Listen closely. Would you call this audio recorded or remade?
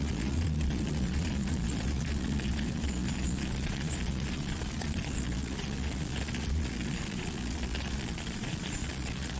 remade